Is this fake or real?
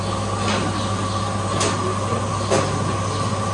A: real